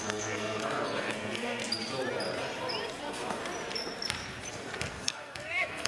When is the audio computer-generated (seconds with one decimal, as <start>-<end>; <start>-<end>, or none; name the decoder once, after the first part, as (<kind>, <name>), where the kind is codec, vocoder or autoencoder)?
0.0-1.6 (codec, SNAC); 3.0-3.4; 4.5-5.9